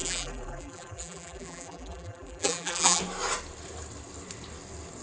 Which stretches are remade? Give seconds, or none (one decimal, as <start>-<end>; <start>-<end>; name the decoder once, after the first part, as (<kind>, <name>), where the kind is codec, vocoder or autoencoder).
0.0-3.0 (vocoder, BigVGAN v2)